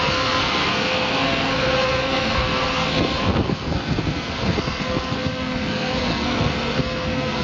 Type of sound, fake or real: fake